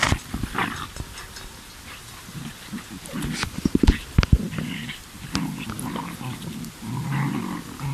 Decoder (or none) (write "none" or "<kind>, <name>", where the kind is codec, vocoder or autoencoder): none